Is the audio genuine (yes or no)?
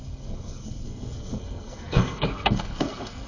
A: no